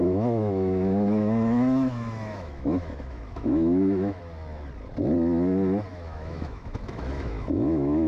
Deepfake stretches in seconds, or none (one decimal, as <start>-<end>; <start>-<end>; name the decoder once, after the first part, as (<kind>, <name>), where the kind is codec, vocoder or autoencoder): 0.0-4.2 (autoencoder, DAC-VAE); 5.9-8.1

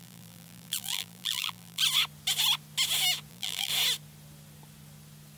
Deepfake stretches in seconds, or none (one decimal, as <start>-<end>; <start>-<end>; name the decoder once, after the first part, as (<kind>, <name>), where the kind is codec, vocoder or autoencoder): 0.0-1.8 (vocoder, BigVGAN v2); 3.3-3.7

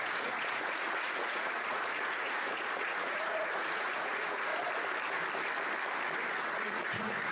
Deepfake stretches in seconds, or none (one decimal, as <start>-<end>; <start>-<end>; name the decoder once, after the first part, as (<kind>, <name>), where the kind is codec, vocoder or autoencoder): 0.0-4.5 (vocoder, Vocos); 6.3-7.3

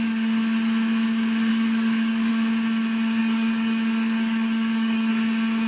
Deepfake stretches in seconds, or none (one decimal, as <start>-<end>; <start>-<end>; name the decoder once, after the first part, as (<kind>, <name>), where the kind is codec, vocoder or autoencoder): 1.5-2.3 (codec, DAC); 3.2-5.1

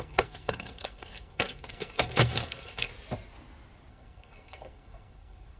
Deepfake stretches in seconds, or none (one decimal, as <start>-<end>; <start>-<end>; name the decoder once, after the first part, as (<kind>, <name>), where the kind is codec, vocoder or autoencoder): 0.0-2.9 (codec, SNAC); 3.9-5.6

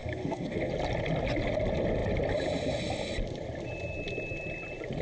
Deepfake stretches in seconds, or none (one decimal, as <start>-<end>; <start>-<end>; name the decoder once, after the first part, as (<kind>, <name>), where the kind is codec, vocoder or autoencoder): 0.0-0.7 (codec, SNAC)